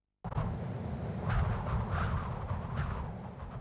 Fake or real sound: real